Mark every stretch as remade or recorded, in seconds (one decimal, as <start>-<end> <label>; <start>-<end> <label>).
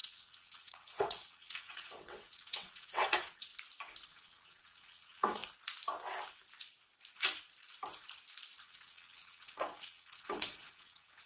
0.0-3.5 remade; 3.5-4.1 recorded; 4.1-5.4 remade; 5.4-8.6 recorded; 8.6-11.3 remade